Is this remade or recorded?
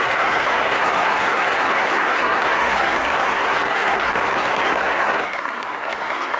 remade